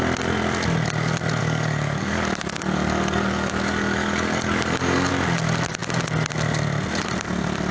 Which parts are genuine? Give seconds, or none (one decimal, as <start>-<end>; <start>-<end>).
0.0-1.4; 5.1-7.7